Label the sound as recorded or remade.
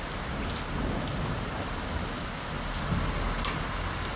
recorded